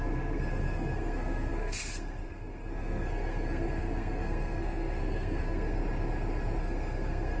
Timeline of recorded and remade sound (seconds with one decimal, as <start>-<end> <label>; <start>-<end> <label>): 0.0-5.8 remade; 5.8-6.6 recorded; 6.6-7.4 remade